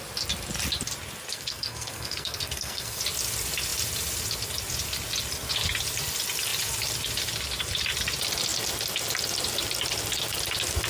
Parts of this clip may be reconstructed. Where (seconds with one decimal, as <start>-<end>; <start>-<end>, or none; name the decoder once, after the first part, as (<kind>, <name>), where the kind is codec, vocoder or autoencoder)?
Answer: 1.3-3.0 (codec, SNAC)